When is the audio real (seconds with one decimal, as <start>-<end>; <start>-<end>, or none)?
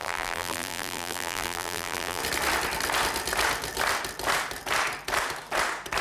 2.2-6.0